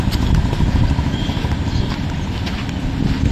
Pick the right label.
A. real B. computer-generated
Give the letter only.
A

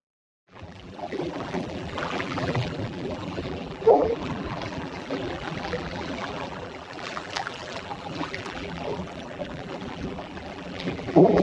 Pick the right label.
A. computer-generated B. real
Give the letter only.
A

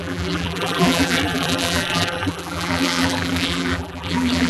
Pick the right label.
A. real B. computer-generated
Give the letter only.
B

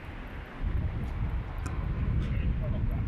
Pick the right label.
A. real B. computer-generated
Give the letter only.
A